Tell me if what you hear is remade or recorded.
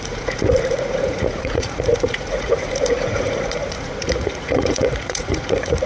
remade